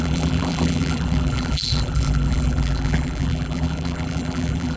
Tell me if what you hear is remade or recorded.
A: remade